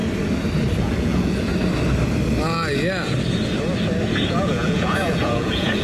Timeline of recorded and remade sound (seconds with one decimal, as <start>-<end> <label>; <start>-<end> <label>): 0.0-0.8 recorded; 0.8-1.5 remade; 1.5-4.2 recorded; 4.2-5.8 remade